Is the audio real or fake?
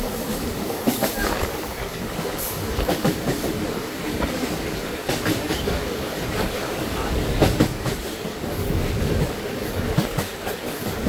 fake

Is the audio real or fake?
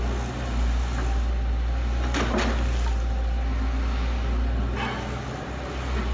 real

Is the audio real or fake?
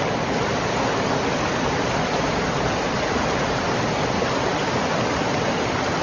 real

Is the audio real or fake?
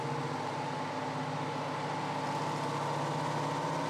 real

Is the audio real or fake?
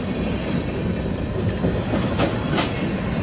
real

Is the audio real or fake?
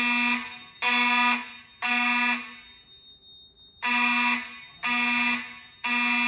real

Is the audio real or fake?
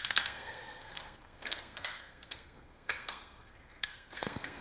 fake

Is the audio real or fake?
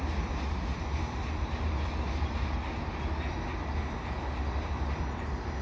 real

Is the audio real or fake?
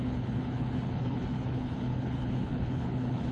fake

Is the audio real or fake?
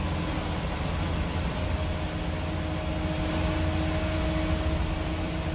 real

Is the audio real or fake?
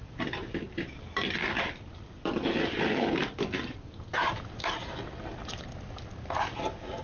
fake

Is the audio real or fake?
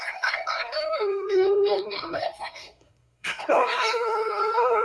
fake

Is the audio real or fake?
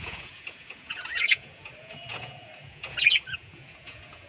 fake